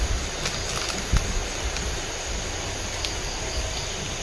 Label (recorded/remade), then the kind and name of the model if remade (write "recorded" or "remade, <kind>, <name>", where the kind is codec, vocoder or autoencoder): recorded